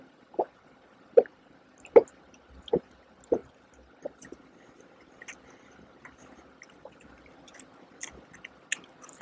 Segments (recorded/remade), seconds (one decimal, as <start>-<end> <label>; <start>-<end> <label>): 0.0-9.2 recorded